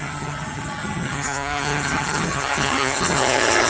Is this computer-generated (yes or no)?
yes